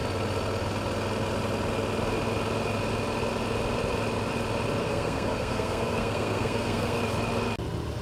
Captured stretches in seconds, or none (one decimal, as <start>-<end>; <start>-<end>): 0.0-4.8; 7.0-8.0